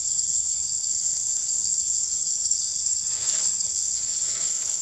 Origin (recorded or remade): remade